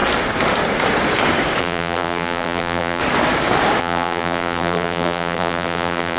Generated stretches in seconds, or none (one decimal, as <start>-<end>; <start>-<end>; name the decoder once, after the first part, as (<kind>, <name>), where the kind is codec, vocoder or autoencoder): 1.6-3.0 (vocoder, BigVGAN v2); 3.8-6.2